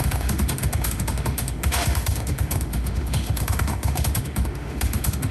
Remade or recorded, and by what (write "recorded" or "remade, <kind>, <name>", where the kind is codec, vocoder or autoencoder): remade, autoencoder, DAC-VAE